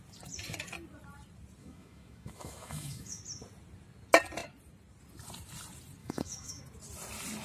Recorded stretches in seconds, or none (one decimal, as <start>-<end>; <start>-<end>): 0.0-1.6; 3.2-6.0; 6.6-7.4